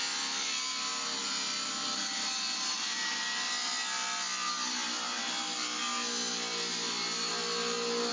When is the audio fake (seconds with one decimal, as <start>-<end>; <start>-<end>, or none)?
none